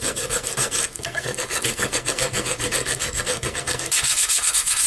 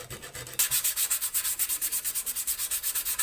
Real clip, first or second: second